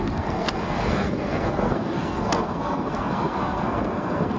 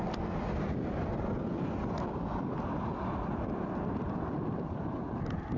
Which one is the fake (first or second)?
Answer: first